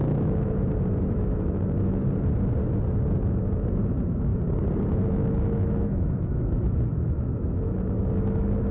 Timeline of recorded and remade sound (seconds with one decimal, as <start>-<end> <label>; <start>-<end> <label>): 0.0-2.0 remade; 2.0-3.2 recorded; 3.2-4.3 remade; 4.3-4.9 recorded; 4.9-8.7 remade